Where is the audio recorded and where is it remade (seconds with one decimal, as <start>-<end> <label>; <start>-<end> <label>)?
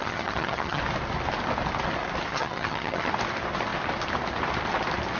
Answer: 0.0-0.8 remade; 0.8-2.3 recorded; 2.3-3.1 remade; 3.1-5.2 recorded